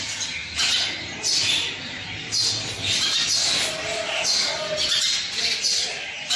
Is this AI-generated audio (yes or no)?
no